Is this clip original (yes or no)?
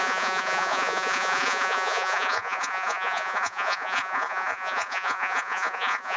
no